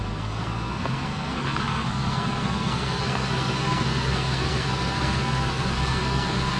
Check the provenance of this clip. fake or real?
fake